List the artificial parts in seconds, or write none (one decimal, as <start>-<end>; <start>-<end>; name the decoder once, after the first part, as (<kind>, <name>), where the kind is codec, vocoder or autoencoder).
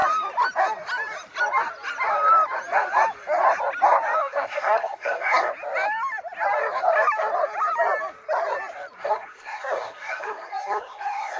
4.2-5.5 (codec, SNAC); 9.0-11.4